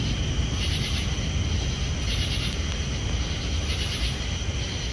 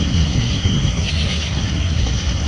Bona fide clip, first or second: first